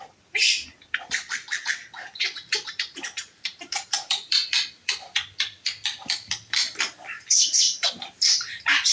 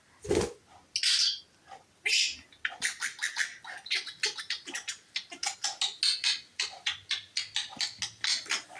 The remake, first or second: first